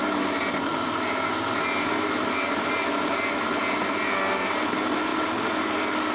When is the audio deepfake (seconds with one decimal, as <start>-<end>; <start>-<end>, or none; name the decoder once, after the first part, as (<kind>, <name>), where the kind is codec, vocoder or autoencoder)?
none